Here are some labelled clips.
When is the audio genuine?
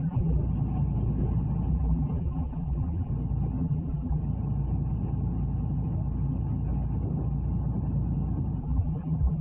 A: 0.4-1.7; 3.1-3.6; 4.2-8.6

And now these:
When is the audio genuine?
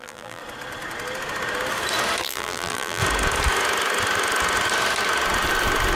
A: 0.4-2.2; 3.0-6.0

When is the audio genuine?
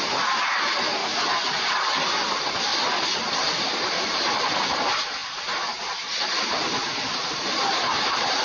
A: 1.0-1.7; 2.7-3.3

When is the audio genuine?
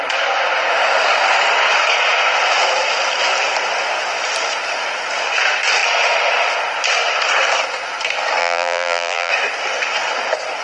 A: 0.0-8.4; 9.3-10.6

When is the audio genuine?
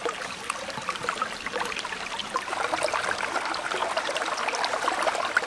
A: 0.6-2.2; 3.0-3.8; 4.3-5.5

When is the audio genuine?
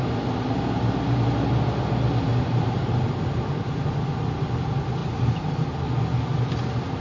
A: 0.0-2.3; 3.0-5.0; 5.9-7.0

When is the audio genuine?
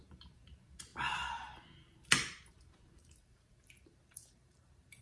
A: 0.9-2.5